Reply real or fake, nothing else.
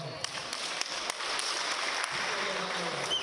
fake